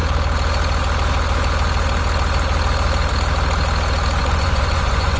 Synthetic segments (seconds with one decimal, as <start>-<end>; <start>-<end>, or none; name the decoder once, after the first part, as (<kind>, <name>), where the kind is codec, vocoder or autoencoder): 4.2-5.2 (vocoder, Vocos)